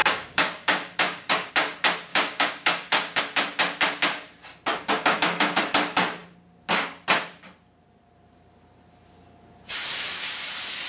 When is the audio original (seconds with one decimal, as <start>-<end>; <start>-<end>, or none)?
1.5-2.1; 3.2-4.7; 5.6-10.9